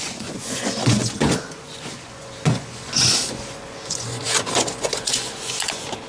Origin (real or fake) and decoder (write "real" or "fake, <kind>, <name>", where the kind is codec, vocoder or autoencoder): fake, vocoder, Vocos